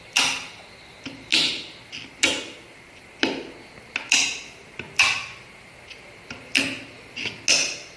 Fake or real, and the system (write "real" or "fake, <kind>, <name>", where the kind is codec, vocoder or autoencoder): real